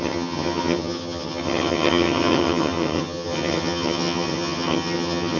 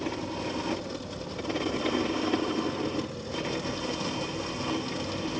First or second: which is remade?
first